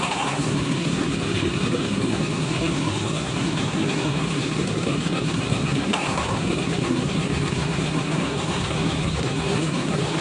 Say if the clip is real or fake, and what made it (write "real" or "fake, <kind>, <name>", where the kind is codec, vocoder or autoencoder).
fake, codec, SNAC